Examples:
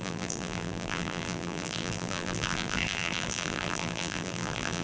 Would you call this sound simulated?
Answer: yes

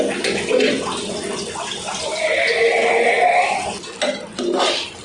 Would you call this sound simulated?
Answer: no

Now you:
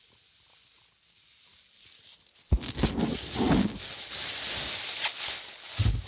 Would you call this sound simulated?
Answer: no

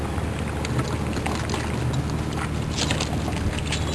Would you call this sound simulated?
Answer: no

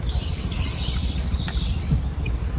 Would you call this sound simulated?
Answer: yes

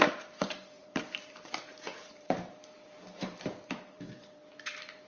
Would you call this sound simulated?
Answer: yes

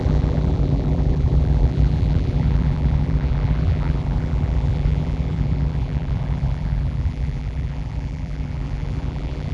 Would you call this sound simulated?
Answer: yes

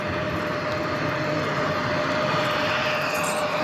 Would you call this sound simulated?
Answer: no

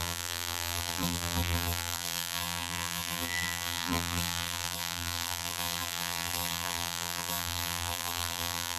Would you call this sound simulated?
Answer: yes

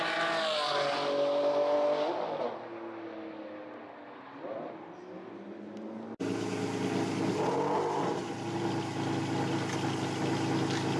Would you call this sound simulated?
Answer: no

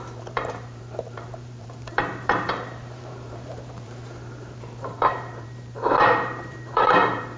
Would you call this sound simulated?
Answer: yes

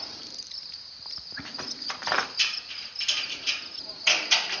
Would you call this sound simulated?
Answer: yes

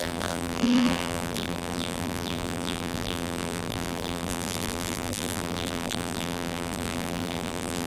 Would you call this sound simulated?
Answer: yes